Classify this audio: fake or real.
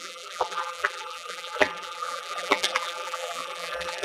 fake